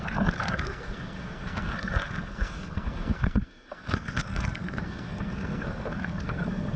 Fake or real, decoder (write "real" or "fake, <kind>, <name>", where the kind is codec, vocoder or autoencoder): fake, codec, SNAC